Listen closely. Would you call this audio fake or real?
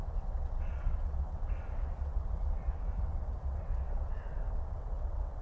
fake